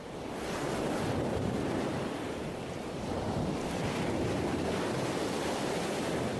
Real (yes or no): yes